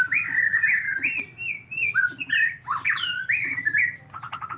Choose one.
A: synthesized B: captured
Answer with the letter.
B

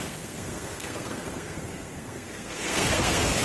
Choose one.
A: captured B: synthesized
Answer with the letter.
B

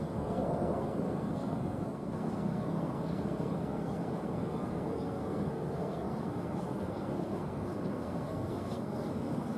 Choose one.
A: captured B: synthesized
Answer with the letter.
B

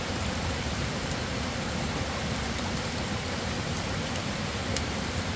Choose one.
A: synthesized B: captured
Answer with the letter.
B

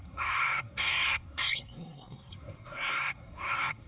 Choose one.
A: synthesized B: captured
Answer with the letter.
A